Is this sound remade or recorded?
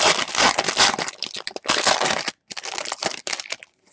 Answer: recorded